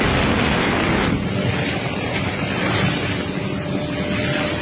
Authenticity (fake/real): real